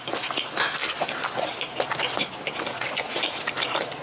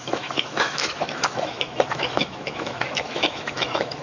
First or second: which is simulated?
second